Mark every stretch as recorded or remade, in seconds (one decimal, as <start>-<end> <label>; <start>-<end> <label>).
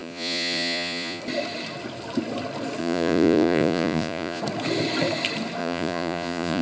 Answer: 0.0-1.2 remade; 1.2-2.8 recorded; 2.8-4.4 remade; 4.4-5.6 recorded; 5.6-6.6 remade